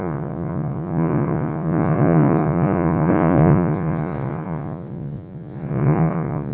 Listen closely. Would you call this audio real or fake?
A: fake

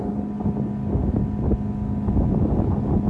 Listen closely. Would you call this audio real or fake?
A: real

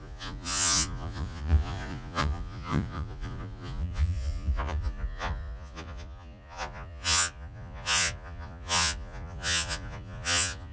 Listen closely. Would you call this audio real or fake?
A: fake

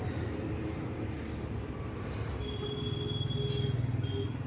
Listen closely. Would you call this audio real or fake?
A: real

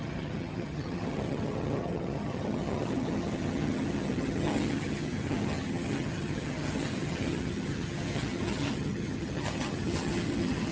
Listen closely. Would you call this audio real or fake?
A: fake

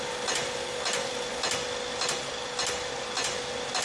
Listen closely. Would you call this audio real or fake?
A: real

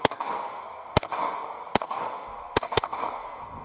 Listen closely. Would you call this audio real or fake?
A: fake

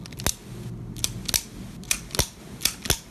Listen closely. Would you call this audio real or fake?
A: real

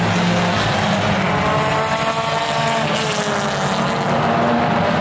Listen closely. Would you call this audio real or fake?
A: real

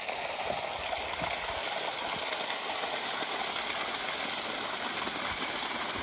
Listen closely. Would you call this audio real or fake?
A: real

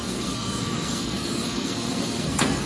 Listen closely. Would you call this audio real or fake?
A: fake